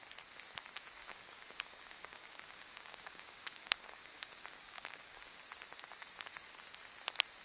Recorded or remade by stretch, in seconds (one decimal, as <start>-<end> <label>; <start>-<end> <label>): 0.0-1.0 recorded; 1.0-5.4 remade; 5.4-7.4 recorded